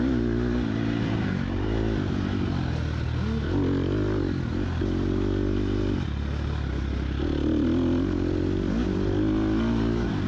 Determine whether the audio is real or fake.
real